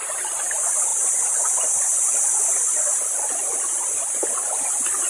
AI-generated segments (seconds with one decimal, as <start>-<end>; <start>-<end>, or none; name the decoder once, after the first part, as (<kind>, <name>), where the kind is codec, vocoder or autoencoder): none